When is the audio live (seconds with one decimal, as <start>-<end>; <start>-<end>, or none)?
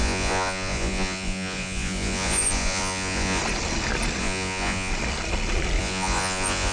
3.4-4.2; 4.9-5.8